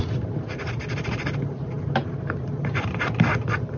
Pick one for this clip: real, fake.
real